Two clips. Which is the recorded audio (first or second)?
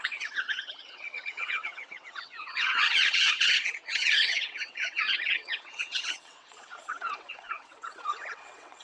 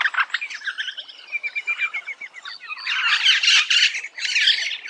second